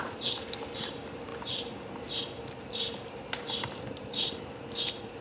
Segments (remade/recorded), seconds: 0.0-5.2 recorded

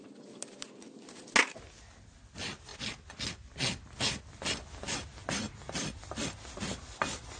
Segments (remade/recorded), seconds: 0.0-7.4 recorded